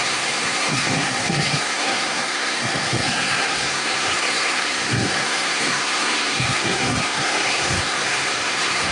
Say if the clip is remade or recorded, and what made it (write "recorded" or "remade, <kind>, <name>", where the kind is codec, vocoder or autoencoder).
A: remade, codec, SNAC